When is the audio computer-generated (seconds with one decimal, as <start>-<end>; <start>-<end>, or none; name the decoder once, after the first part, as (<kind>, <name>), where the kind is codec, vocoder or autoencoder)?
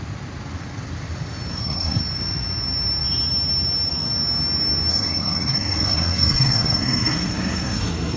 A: 1.5-2.0 (codec, SNAC); 4.9-8.2